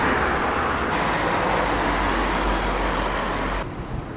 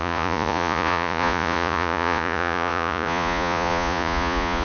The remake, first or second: second